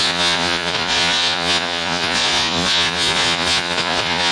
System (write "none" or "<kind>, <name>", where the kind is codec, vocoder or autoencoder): vocoder, Vocos